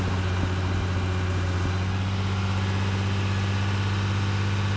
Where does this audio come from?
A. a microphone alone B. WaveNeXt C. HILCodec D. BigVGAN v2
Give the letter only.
A